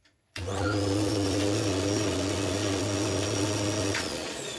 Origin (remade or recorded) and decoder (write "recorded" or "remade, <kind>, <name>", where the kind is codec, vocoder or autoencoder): remade, vocoder, Vocos